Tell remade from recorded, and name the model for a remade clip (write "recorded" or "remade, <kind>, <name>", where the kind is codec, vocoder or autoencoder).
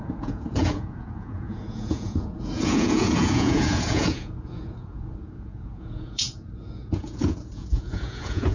remade, vocoder, Vocos